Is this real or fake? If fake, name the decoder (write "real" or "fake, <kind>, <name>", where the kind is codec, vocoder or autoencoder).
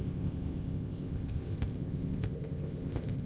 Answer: fake, codec, ZipCodec